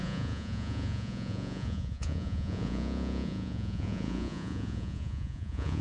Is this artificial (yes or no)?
yes